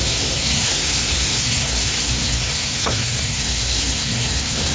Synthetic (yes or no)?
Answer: yes